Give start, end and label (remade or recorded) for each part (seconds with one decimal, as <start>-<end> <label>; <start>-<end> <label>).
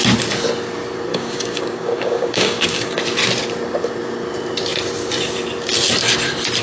0.0-1.1 recorded; 1.1-3.0 remade; 3.0-6.6 recorded